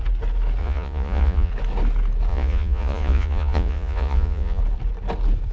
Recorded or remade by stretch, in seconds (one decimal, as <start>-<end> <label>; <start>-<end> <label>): 0.0-0.6 recorded; 0.6-1.5 remade; 1.5-2.3 recorded; 2.3-4.6 remade; 4.6-5.5 recorded